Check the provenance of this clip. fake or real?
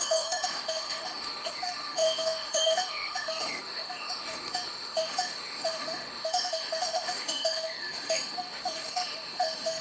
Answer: fake